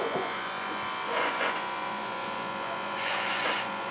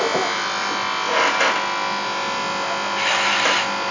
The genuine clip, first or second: second